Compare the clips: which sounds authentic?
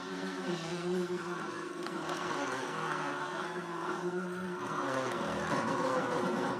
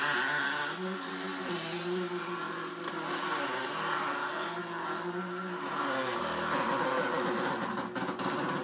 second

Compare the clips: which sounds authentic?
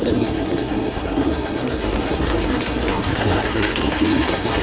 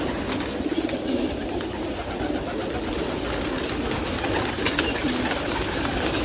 second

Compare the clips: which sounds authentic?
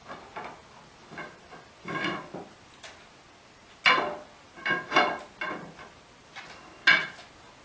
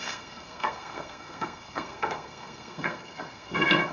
first